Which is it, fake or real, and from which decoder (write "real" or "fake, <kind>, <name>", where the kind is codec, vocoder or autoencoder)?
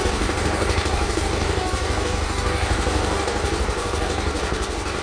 fake, codec, DAC